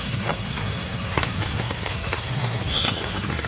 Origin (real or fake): fake